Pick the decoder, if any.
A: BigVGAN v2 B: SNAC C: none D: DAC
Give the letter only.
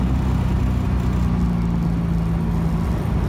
C